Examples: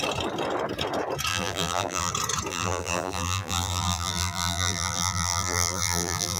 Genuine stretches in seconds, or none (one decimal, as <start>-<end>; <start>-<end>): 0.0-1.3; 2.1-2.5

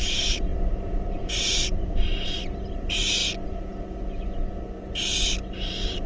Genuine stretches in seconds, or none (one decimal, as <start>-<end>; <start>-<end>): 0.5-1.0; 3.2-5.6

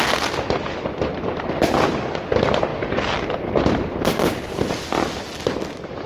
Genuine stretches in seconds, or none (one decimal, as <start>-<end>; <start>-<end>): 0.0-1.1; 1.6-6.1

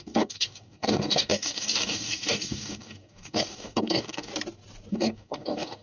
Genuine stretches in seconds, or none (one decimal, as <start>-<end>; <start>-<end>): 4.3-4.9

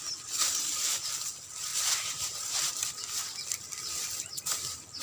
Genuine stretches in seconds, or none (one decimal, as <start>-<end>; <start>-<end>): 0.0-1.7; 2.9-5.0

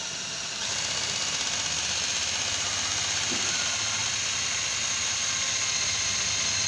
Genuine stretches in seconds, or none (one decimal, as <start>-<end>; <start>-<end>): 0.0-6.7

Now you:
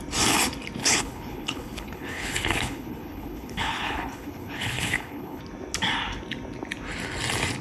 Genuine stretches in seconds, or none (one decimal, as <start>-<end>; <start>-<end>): 0.0-0.8; 5.4-7.6